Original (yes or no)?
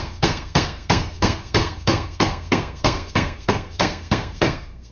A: no